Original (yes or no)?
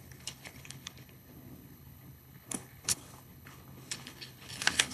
no